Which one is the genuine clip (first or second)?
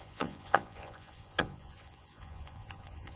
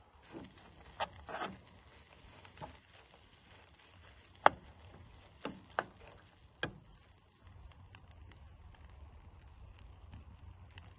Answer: second